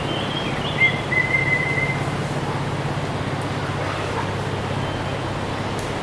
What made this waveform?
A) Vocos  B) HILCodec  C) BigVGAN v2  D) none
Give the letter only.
D